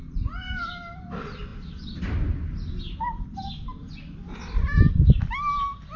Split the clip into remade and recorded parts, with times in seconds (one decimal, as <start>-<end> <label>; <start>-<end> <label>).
0.0-6.0 recorded